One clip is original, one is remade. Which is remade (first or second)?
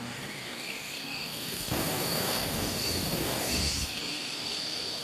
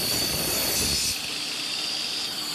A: first